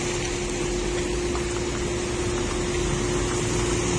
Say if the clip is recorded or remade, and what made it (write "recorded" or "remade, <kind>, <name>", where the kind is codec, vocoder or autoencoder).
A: recorded